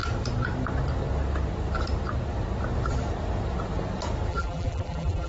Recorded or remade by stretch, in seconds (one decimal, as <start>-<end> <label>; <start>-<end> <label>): 0.0-4.3 recorded; 4.3-5.3 remade